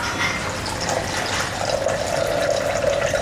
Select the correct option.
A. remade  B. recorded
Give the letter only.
B